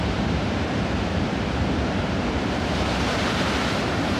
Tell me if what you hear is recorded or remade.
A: remade